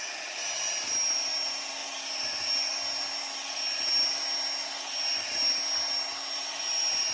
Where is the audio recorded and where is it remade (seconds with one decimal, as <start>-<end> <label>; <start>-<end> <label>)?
0.0-7.1 recorded